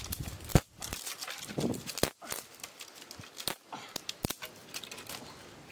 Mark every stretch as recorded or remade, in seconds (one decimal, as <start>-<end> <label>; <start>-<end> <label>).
0.0-5.7 recorded